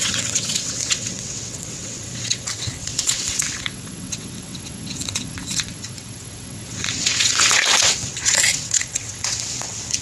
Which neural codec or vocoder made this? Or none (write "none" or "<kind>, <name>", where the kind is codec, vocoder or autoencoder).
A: vocoder, WaveNeXt